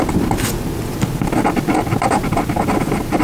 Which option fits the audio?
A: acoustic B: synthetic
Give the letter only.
A